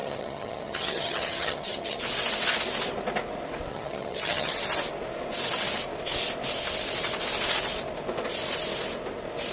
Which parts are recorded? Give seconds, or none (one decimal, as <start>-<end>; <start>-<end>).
2.0-3.7; 4.5-9.5